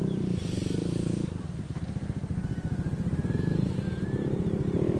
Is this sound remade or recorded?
remade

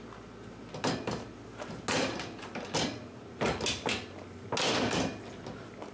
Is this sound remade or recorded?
recorded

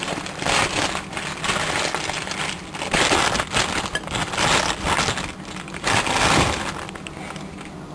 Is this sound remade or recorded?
recorded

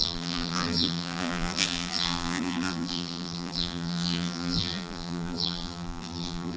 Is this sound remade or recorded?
remade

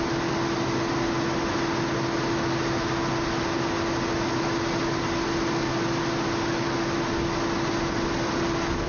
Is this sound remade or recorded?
recorded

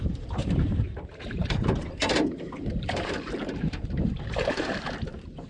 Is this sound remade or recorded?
remade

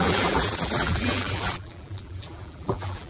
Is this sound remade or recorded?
remade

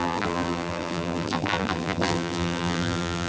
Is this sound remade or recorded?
remade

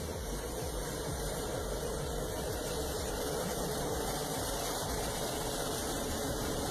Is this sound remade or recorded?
remade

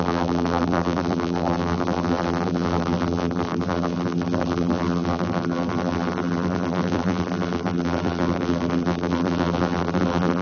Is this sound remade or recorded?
remade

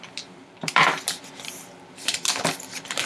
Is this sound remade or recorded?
remade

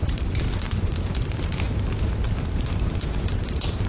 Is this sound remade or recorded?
remade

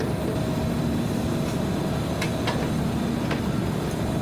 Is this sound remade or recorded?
recorded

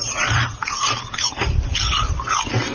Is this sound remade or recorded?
recorded